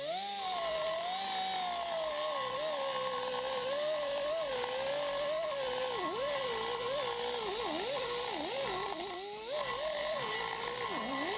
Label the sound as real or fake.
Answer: real